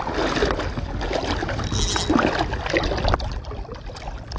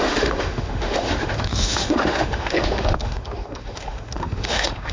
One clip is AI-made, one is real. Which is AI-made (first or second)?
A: second